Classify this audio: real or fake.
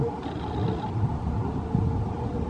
real